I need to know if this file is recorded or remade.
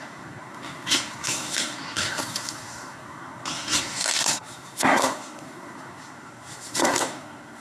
remade